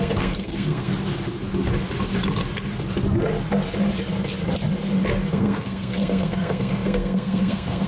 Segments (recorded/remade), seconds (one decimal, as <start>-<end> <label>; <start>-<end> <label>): 0.0-0.9 remade; 0.9-5.3 recorded; 5.3-7.9 remade

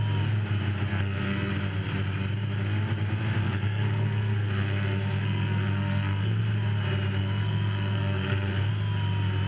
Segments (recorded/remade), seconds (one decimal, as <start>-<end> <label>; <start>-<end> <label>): 0.0-0.9 recorded; 0.9-1.5 remade; 1.5-3.4 recorded; 3.4-6.4 remade; 6.4-7.2 recorded; 7.2-8.7 remade; 8.7-9.5 recorded

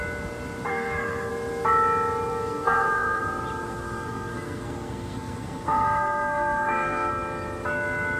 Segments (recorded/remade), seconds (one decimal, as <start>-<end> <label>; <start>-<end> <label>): 0.0-0.7 recorded; 0.7-1.3 remade; 1.3-2.3 recorded; 2.3-3.2 remade; 3.2-3.6 recorded; 3.6-7.1 remade; 7.1-8.2 recorded

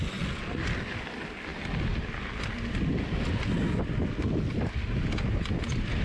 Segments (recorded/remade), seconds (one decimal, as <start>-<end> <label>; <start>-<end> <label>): 0.0-6.0 recorded

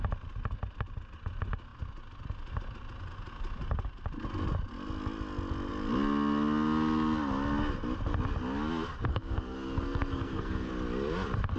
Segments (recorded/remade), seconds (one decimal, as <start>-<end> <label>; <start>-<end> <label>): 0.0-9.1 recorded; 9.1-10.7 remade; 10.7-11.6 recorded